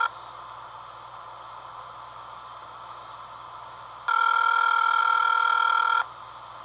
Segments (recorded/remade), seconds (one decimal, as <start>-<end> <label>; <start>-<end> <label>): 0.0-6.6 recorded